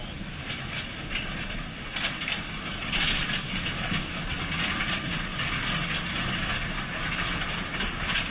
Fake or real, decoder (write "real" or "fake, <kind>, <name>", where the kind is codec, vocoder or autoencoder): real